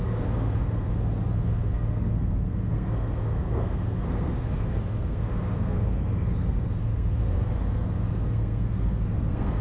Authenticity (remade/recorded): remade